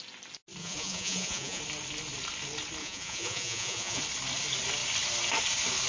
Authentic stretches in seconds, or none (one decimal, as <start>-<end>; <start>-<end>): 0.0-0.6; 1.6-2.8; 4.0-5.9